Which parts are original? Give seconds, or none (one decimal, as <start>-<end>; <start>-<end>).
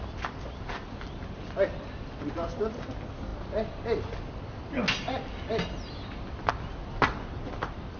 0.0-8.0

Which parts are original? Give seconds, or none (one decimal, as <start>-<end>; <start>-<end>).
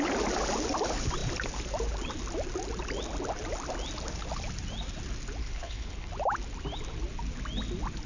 0.0-5.4; 6.1-8.1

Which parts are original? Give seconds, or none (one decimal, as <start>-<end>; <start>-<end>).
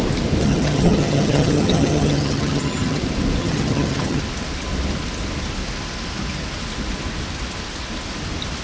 0.0-0.4; 3.0-3.4; 4.2-8.6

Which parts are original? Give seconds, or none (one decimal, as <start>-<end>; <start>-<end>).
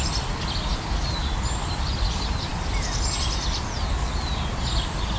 0.0-5.2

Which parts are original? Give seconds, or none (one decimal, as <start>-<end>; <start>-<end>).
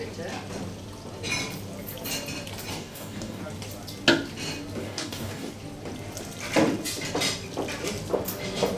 0.0-2.7; 3.4-4.8; 5.5-8.8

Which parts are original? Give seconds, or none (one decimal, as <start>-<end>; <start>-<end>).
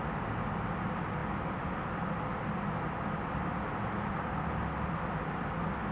0.0-5.9